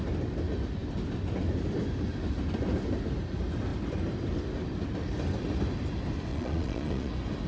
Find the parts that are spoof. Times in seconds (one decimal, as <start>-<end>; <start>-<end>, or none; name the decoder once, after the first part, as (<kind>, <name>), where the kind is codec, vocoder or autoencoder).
6.3-7.1 (vocoder, Vocos)